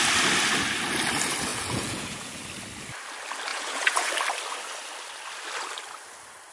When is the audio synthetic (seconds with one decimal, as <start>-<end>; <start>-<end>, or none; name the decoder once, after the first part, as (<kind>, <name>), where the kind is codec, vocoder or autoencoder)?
1.5-2.4 (vocoder, Vocos); 3.5-4.1